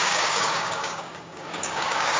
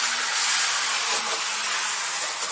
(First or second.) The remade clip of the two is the first